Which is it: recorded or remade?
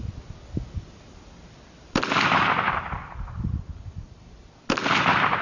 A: recorded